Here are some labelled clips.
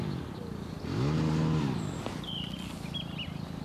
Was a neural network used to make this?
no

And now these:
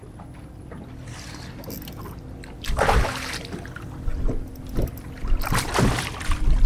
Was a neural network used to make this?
no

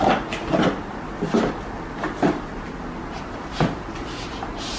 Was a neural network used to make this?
no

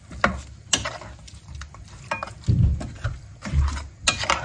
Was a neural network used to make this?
no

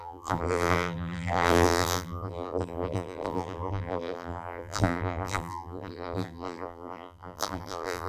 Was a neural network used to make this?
yes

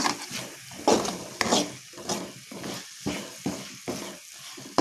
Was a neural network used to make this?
no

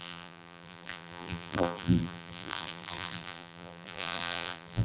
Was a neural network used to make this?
yes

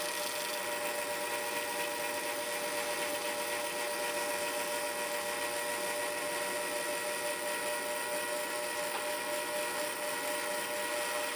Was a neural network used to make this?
no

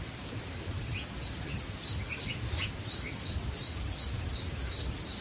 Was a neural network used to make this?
yes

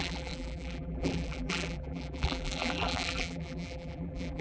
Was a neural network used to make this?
yes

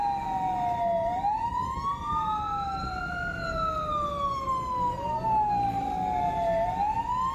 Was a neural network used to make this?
no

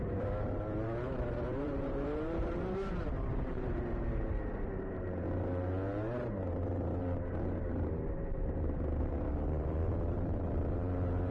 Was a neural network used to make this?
yes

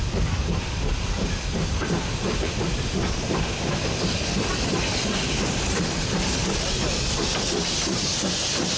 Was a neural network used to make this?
yes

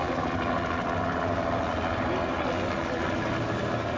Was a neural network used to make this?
no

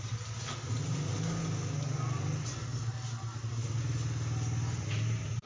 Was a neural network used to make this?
no